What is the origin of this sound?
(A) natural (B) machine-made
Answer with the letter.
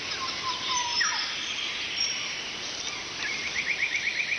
A